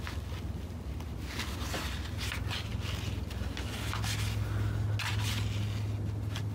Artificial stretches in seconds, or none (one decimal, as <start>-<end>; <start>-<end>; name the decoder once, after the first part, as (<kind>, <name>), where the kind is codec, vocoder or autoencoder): none